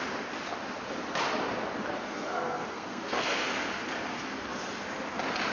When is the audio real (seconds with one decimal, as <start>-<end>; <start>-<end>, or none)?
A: 0.0-1.9; 3.5-5.5